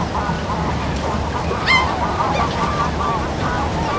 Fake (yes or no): no